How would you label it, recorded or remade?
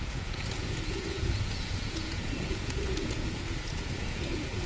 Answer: remade